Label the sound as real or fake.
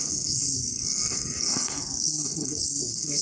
fake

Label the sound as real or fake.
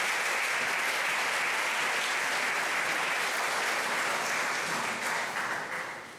real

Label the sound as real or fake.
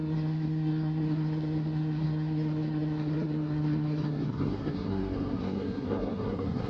fake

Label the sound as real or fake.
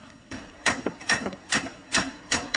fake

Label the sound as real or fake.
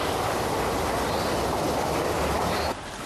real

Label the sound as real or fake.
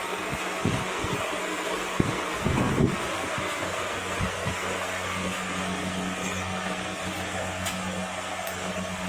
fake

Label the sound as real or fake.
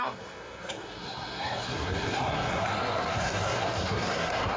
fake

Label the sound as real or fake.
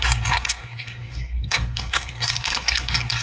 fake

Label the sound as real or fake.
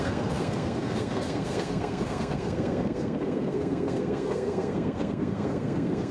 fake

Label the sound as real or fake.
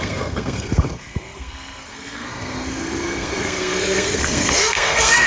fake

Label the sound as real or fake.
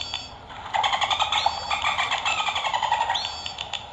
real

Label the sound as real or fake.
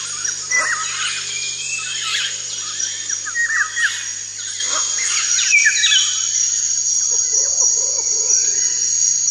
real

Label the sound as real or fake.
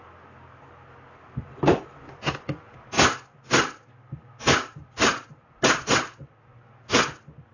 real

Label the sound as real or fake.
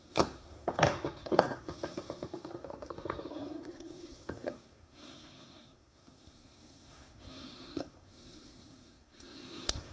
fake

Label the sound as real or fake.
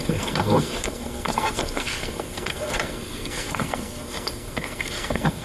fake